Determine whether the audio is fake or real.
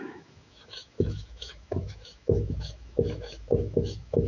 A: fake